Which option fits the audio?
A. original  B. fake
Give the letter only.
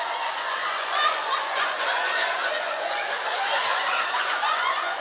B